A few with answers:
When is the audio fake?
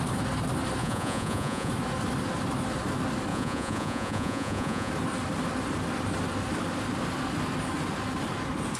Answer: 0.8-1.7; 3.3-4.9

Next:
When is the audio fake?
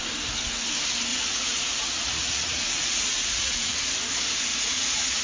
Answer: 1.1-3.9; 4.5-5.2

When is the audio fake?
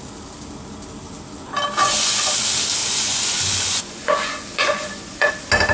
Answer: 1.8-2.3; 2.8-5.3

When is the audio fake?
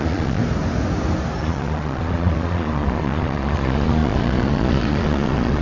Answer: 0.0-0.4; 1.4-5.6